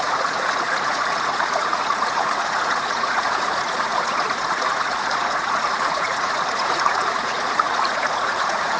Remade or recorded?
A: remade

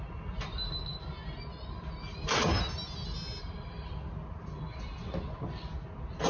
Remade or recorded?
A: recorded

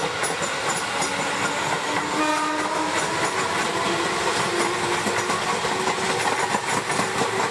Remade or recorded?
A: recorded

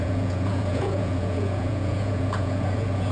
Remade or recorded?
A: remade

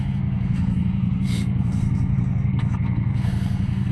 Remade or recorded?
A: remade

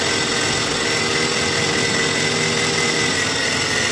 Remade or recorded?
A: recorded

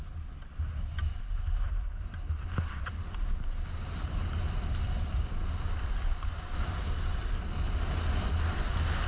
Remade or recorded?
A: recorded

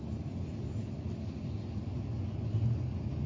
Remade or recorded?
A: recorded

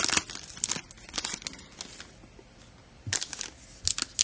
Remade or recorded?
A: recorded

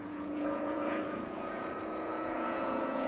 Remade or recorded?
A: remade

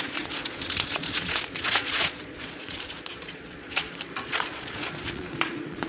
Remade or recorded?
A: remade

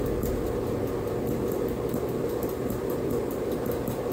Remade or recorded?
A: recorded